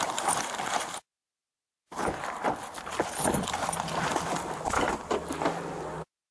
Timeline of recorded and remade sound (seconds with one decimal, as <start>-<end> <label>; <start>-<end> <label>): 0.0-6.3 recorded